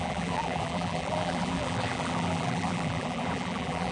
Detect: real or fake fake